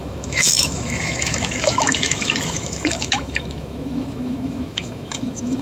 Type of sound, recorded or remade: remade